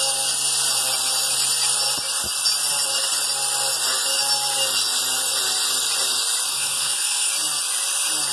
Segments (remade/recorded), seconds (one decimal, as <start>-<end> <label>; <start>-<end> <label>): 0.0-6.5 recorded; 6.5-7.3 remade; 7.3-8.3 recorded

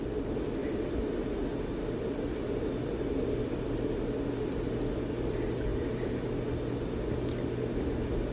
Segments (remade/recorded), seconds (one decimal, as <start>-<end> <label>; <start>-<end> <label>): 0.0-8.3 recorded

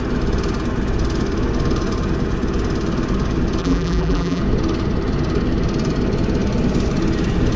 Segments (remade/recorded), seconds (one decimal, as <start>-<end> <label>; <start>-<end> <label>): 0.0-3.6 recorded; 3.6-4.4 remade; 4.4-7.6 recorded

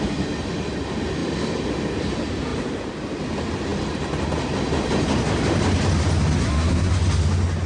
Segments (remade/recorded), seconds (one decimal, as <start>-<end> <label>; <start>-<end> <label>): 0.0-6.4 recorded; 6.4-6.9 remade; 6.9-7.7 recorded

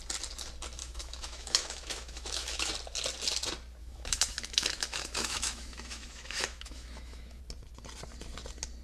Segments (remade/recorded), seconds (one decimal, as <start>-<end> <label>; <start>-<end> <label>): 0.0-0.8 recorded; 0.8-2.7 remade; 2.7-3.8 recorded; 3.8-7.4 remade; 7.4-8.8 recorded

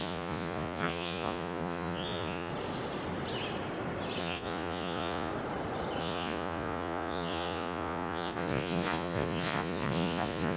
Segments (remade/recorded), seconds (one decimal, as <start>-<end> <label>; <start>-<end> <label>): 0.0-2.5 remade; 2.5-4.2 recorded; 4.2-5.3 remade; 5.3-6.0 recorded; 6.0-10.6 remade

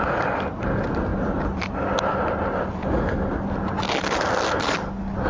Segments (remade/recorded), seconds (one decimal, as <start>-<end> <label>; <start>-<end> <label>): 0.0-5.3 recorded